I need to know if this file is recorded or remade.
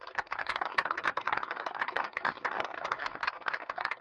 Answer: remade